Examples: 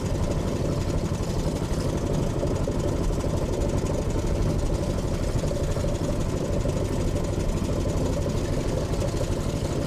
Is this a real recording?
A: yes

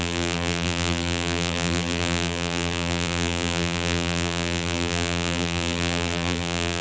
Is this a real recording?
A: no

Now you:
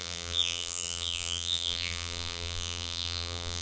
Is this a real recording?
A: no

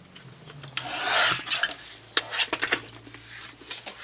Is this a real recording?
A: yes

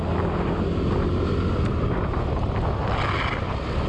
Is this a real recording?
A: yes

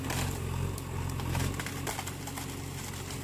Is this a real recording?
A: yes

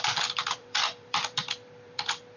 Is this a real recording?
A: no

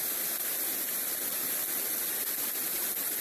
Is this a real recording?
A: yes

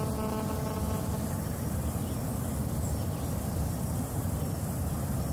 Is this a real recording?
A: yes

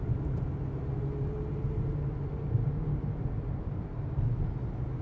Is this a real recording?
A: yes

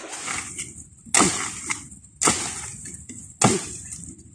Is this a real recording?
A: yes